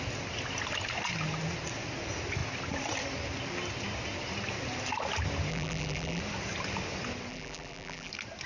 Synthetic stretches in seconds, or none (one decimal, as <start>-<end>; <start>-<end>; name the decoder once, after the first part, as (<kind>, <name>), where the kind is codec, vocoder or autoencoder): 5.5-6.2 (vocoder, BigVGAN v2); 7.3-8.1

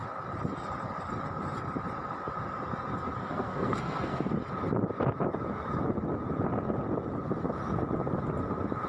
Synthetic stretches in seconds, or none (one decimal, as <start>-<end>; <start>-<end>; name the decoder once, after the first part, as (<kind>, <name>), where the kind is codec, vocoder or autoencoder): 3.2-4.3 (codec, SNAC)

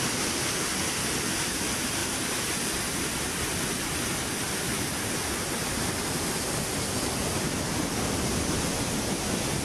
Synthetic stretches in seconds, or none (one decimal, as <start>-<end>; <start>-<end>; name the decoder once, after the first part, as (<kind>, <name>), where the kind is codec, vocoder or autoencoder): 2.0-7.2 (vocoder, BigVGAN v2)

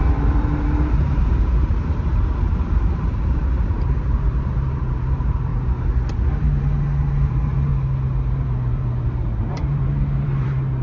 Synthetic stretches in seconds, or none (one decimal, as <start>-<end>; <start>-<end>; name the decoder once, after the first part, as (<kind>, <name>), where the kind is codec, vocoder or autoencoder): 0.0-5.5 (vocoder, BigVGAN v2); 7.3-7.7; 8.3-10.8

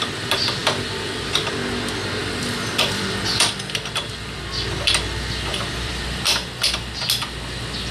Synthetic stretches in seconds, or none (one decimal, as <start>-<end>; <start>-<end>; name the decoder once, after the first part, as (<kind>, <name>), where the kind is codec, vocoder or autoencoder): 0.6-1.5 (vocoder, BigVGAN v2); 2.2-3.4; 5.5-6.9

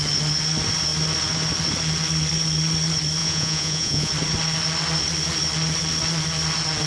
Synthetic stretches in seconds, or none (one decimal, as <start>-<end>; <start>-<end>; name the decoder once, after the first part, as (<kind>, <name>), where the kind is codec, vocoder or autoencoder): 3.2-4.1 (vocoder, Vocos)